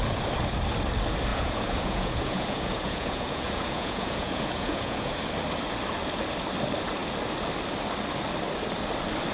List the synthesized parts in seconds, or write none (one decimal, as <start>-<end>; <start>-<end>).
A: 1.3-5.2